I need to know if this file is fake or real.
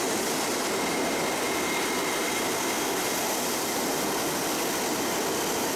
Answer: real